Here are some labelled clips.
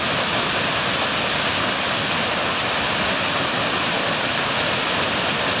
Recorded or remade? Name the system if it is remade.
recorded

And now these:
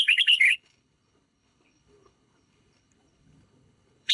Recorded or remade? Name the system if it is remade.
remade, codec, HILCodec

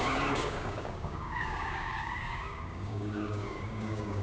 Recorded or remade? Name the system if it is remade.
remade, codec, DAC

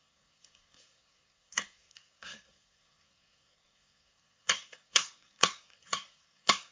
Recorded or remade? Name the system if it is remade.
remade, codec, SNAC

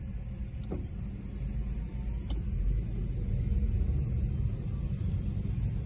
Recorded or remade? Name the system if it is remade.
recorded